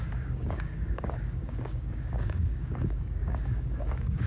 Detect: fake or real fake